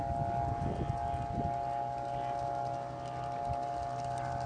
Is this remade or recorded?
recorded